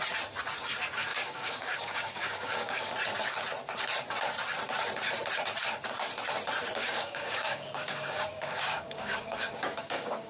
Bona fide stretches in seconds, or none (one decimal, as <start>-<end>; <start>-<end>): 0.0-1.1; 2.9-6.8